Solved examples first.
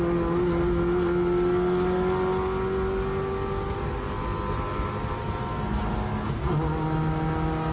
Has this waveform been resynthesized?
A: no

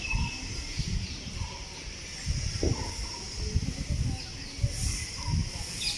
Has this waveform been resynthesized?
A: no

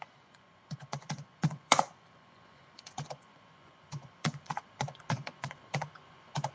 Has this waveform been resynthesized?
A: yes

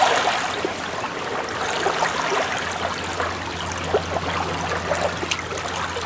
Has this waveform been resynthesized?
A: no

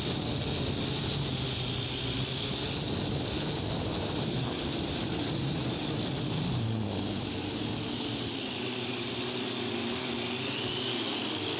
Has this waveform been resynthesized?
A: no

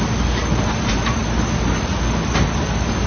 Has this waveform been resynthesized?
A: no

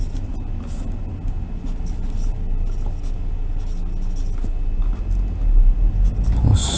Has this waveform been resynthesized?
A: no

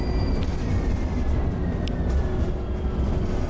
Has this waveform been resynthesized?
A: no